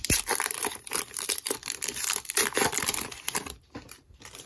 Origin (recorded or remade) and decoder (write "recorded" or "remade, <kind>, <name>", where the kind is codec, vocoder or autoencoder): remade, vocoder, BigVGAN v2